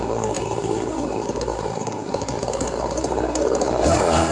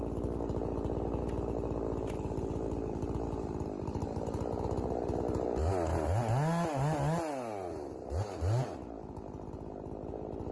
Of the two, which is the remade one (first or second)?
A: first